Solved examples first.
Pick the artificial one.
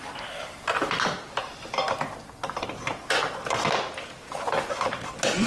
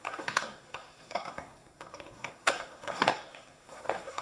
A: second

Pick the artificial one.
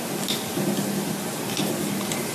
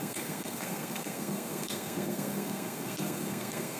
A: second